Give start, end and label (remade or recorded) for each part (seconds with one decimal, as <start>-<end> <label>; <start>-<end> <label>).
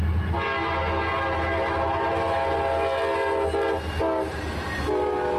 0.0-5.4 recorded